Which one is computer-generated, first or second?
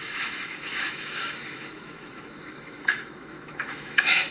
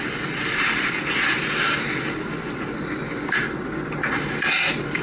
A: first